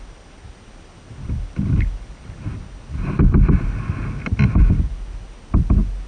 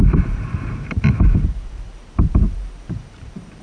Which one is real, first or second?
first